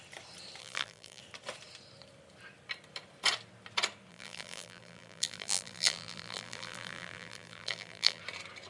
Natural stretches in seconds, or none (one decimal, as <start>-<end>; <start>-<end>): 0.0-0.6; 1.2-4.1; 8.2-8.7